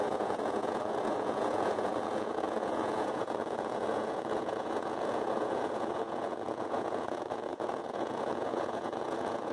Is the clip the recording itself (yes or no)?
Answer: no